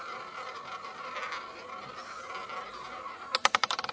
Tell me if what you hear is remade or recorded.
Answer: recorded